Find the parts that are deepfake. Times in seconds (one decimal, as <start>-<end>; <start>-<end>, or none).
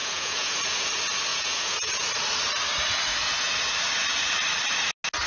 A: 0.0-0.9; 1.3-2.1; 3.1-3.7